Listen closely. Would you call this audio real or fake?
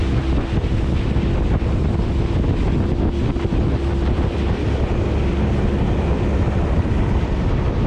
real